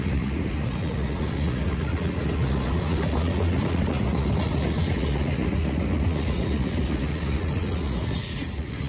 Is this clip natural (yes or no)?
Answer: no